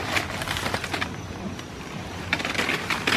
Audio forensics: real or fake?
real